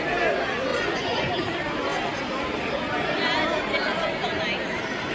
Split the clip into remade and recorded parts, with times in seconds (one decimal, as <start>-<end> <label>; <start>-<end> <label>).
0.0-0.7 recorded; 0.7-1.3 remade; 1.3-5.1 recorded